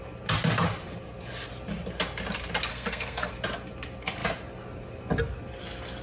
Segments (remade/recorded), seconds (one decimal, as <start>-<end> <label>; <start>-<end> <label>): 0.0-2.7 recorded; 2.7-3.3 remade; 3.3-6.0 recorded